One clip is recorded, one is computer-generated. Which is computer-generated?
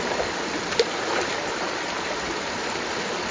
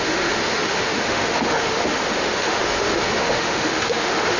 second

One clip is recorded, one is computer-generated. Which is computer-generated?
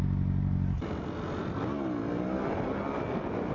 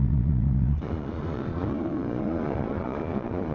second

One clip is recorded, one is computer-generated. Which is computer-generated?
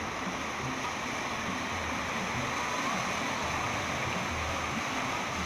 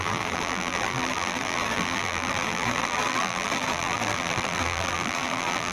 second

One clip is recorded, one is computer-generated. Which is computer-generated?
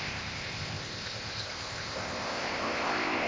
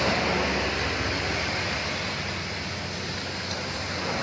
first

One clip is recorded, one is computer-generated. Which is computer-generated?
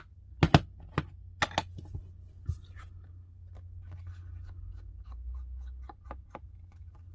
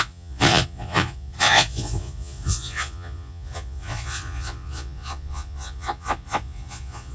second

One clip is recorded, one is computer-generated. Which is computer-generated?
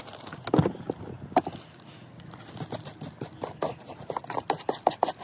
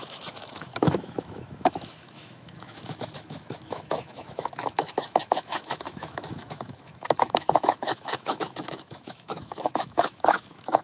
second